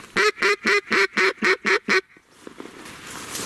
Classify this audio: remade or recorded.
recorded